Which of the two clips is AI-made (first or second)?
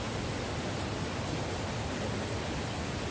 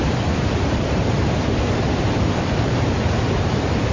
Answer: second